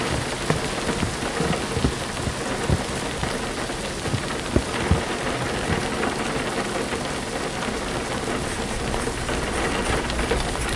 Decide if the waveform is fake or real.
real